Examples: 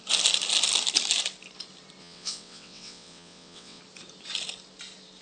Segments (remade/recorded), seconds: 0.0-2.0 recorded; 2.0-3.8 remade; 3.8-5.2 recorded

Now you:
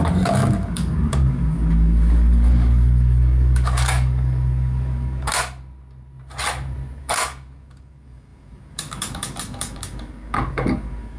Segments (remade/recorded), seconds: 0.0-5.3 remade; 5.3-7.0 recorded; 7.0-11.2 remade